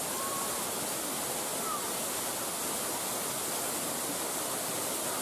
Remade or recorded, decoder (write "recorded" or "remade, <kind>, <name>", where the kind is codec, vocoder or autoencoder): recorded